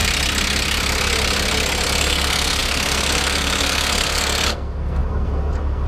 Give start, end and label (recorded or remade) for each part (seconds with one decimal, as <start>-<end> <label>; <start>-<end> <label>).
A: 0.0-2.0 recorded; 2.0-5.9 remade